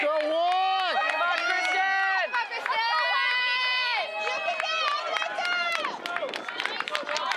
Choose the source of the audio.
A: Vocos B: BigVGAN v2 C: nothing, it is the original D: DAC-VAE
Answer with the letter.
C